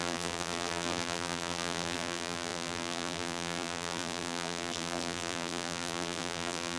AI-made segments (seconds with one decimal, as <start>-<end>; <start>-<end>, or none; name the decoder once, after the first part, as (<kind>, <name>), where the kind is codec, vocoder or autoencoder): 0.0-6.8 (vocoder, BigVGAN v2)

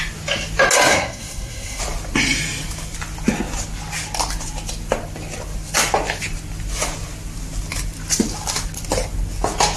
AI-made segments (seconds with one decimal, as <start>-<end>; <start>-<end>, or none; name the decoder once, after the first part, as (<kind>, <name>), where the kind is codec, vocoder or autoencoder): 0.9-1.8 (codec, SNAC)

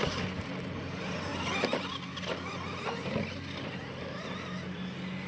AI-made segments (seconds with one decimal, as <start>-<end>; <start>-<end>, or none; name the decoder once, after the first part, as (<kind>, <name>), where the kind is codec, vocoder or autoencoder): none

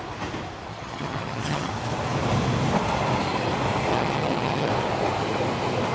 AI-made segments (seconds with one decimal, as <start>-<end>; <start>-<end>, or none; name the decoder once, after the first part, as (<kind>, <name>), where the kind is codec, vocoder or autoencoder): 0.7-1.7 (vocoder, HiFi-GAN); 3.9-4.7

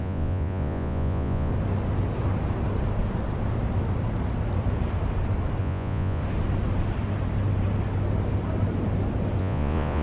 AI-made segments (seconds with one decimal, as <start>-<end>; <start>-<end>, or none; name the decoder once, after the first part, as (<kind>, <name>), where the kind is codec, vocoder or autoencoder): 0.0-1.5 (vocoder, Vocos); 5.6-6.2; 9.4-10.0

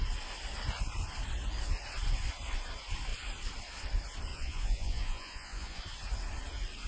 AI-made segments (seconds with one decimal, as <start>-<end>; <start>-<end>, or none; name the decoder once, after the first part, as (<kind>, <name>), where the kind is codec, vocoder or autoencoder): 4.3-5.8 (vocoder, Vocos)

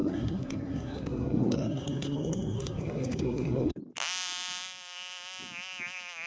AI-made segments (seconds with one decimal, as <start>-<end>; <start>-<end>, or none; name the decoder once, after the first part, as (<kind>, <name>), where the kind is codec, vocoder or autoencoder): 0.0-3.8 (codec, SNAC)